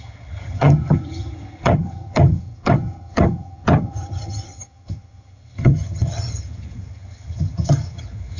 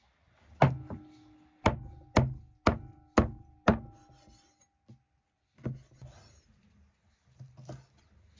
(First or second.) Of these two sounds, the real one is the second